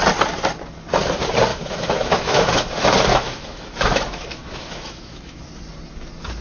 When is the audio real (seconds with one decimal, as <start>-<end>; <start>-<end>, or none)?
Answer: 0.0-1.5; 2.7-3.1; 5.4-6.4